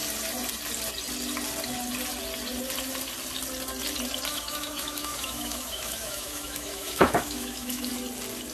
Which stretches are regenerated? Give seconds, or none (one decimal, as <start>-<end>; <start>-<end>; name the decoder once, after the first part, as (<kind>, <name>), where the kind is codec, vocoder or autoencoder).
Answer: 4.3-7.9 (autoencoder, DAC-VAE)

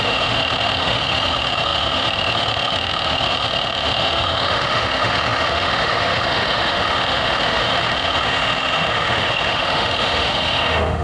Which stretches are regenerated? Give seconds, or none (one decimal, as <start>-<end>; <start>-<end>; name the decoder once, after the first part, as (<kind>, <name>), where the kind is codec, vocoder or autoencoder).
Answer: 0.0-11.0 (autoencoder, DAC-VAE)

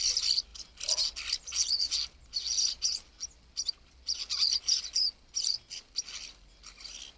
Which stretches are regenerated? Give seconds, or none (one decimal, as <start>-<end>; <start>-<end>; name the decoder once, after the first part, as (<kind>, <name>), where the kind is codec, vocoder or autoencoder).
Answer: none

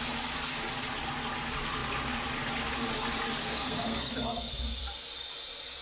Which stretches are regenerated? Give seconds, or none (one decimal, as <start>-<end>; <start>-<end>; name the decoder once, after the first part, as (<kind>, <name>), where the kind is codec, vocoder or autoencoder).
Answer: 3.4-4.5 (codec, SNAC)

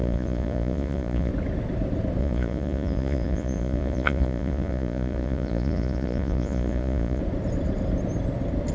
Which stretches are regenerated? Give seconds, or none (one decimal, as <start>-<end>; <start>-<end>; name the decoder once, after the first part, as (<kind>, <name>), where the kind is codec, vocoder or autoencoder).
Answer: 0.0-1.3 (vocoder, Vocos); 2.2-7.2

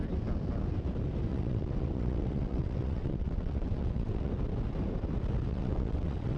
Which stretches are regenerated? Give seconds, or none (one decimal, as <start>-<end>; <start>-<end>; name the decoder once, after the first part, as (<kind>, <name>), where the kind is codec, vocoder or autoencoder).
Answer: 1.3-4.3 (vocoder, WaveNeXt); 5.5-6.4

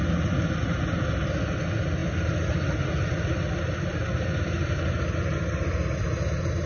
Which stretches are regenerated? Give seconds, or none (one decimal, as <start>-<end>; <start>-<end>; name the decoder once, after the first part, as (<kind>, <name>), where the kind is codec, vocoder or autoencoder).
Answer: none